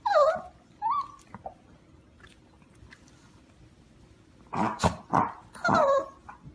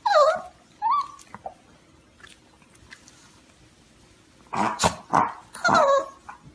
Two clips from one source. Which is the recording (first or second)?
second